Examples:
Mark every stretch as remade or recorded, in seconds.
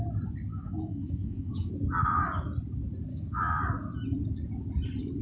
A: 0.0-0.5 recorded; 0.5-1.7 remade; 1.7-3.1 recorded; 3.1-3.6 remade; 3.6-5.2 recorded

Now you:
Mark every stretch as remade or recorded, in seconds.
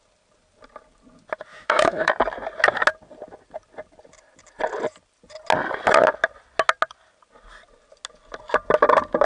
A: 0.0-1.5 recorded; 1.5-2.1 remade; 2.1-9.2 recorded